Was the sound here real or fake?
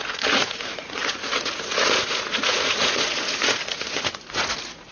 fake